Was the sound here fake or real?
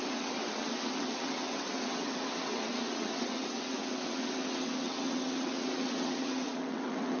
fake